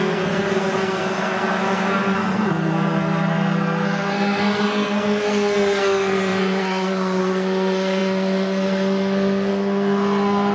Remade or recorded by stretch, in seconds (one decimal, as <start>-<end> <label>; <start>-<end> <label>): 0.0-10.5 remade